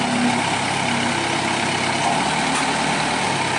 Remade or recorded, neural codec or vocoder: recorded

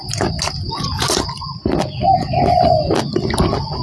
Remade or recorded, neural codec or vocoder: recorded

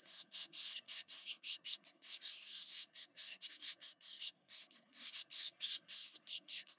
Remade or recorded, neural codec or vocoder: remade, codec, SNAC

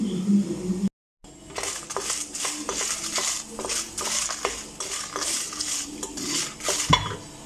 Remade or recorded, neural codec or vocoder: recorded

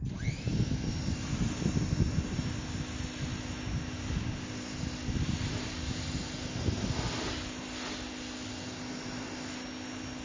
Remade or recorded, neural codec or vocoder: recorded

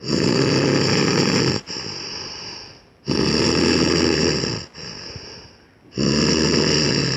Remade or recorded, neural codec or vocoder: recorded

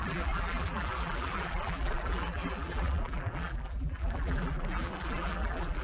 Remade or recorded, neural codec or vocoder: remade, vocoder, BigVGAN v2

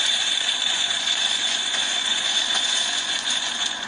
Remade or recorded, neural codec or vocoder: remade, vocoder, Vocos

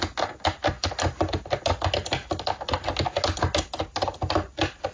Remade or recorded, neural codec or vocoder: recorded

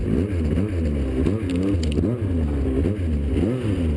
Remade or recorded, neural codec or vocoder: recorded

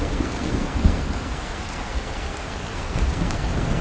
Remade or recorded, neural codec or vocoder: remade, codec, SNAC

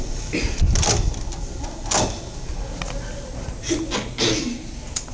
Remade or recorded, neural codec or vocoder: recorded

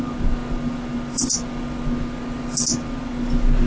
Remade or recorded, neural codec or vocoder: recorded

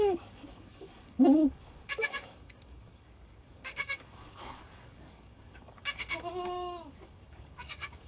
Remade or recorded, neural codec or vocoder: remade, codec, DAC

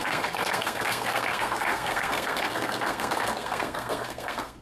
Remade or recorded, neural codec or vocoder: remade, codec, SNAC